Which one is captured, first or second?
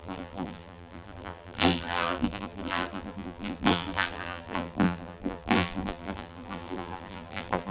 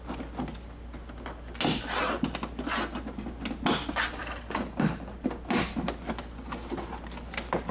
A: second